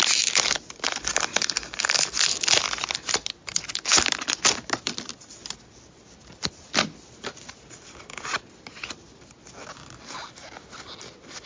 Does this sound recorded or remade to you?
recorded